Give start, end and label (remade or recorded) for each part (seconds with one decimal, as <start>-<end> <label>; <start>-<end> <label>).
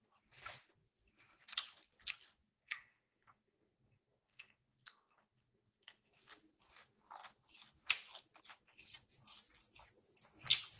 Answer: 0.0-2.5 recorded; 2.5-6.1 remade; 6.1-10.8 recorded